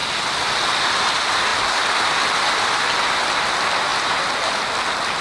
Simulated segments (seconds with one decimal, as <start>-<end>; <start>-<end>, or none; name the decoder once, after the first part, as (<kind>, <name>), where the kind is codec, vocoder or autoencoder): none